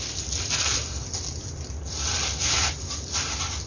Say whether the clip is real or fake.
real